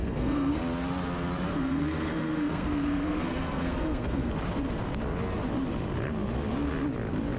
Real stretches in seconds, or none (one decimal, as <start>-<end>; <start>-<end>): 0.6-1.5; 4.3-7.4